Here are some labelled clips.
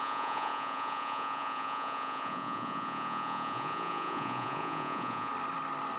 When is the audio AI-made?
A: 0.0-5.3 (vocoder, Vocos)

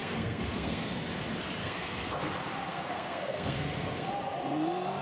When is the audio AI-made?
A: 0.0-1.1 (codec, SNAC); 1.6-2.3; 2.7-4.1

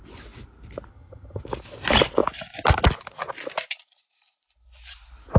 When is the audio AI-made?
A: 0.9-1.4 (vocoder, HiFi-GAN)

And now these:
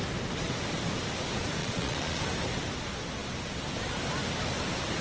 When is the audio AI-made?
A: 1.6-2.2 (vocoder, Vocos)

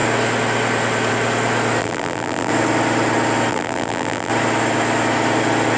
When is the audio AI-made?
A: 1.8-2.5 (vocoder, BigVGAN v2); 3.5-4.3

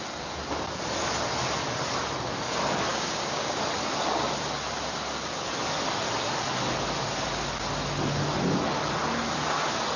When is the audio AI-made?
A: 2.9-3.6 (codec, DAC)